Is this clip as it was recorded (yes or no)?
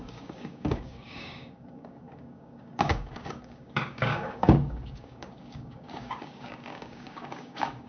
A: no